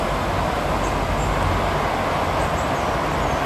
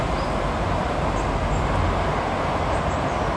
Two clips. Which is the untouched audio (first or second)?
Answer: first